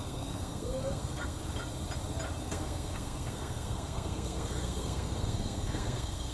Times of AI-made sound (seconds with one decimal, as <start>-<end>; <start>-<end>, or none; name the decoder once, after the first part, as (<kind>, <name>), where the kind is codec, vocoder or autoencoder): 0.0-1.4 (codec, SNAC); 2.4-6.3